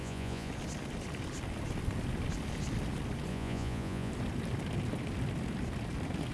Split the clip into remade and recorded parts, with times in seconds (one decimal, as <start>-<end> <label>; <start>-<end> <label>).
0.0-0.5 remade; 0.5-3.3 recorded; 3.3-4.1 remade; 4.1-6.3 recorded